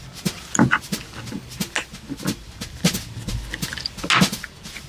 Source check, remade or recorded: recorded